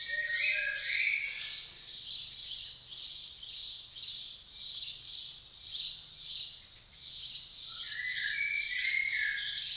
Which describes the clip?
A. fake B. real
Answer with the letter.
B